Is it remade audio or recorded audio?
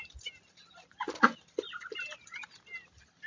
recorded